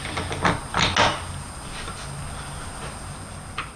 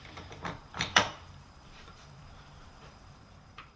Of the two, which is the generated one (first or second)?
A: second